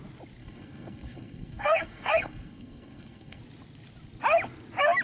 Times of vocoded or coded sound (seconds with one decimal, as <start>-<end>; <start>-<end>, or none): 0.4-3.4